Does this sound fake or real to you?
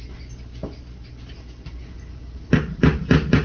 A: real